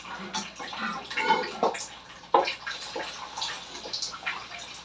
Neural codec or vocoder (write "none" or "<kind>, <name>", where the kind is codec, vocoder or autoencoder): none